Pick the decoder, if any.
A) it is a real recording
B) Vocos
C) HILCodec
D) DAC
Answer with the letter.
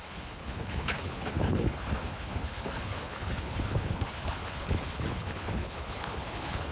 C